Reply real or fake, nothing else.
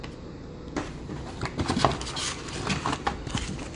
real